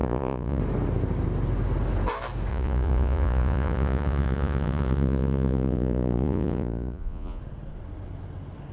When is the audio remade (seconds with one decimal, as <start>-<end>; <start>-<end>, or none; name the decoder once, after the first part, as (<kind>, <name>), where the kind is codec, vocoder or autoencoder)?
0.0-0.6 (vocoder, Vocos); 2.5-7.4